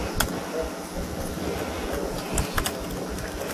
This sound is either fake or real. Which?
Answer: real